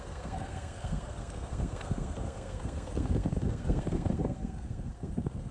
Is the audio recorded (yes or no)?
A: no